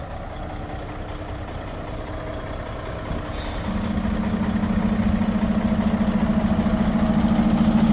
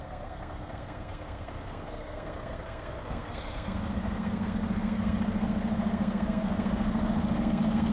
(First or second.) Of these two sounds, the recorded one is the first